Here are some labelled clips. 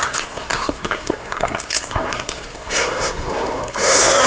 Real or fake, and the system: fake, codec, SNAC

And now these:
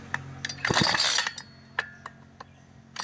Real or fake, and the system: real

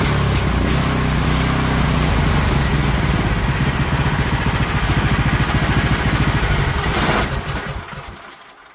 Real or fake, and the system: real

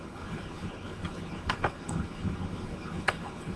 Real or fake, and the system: fake, codec, HILCodec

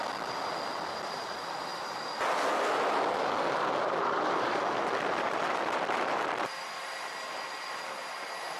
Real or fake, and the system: real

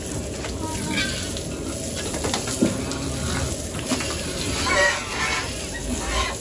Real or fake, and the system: real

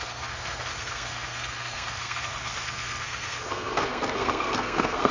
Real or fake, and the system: fake, codec, SNAC